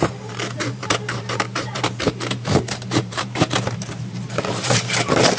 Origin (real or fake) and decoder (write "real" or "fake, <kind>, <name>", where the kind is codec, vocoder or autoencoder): fake, vocoder, BigVGAN v2